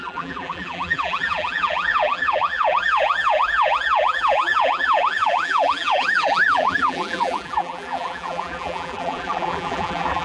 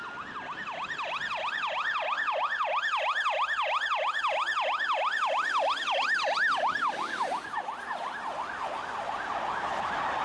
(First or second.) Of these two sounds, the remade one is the first